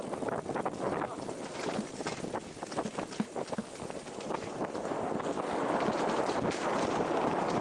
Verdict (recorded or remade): recorded